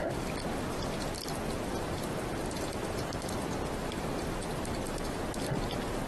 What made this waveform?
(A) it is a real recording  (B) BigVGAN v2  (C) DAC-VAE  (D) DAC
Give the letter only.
A